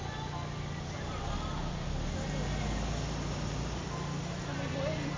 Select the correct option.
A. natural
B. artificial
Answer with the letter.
A